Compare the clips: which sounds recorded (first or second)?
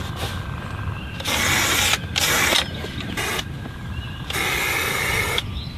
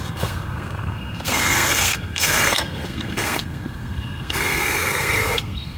first